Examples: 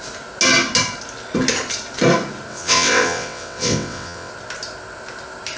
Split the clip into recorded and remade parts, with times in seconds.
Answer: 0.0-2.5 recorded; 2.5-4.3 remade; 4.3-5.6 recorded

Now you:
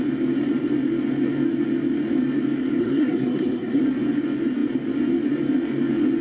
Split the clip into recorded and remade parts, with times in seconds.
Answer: 0.0-2.8 recorded; 2.8-3.8 remade; 3.8-6.2 recorded

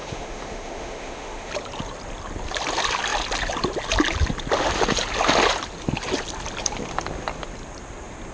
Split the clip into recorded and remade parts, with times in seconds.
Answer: 0.0-1.5 remade; 1.5-8.3 recorded

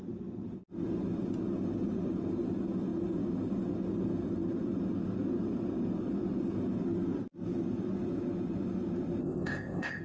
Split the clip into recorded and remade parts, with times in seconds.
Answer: 0.0-9.2 recorded; 9.2-10.0 remade

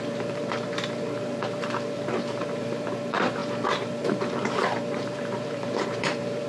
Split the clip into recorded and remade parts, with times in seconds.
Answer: 0.0-6.5 remade

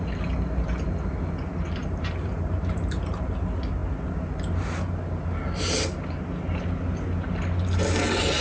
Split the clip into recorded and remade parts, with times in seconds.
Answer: 0.0-1.8 recorded; 1.8-3.3 remade; 3.3-8.4 recorded